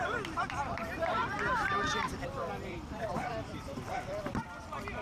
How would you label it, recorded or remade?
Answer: remade